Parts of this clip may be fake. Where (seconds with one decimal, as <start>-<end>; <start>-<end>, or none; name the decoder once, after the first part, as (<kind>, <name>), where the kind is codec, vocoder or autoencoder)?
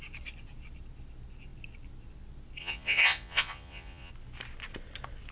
2.6-4.1 (vocoder, Vocos)